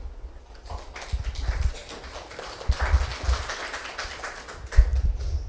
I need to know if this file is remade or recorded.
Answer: recorded